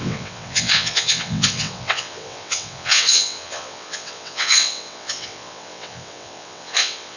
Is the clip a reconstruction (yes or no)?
yes